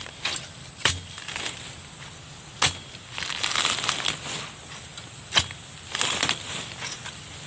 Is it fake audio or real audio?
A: real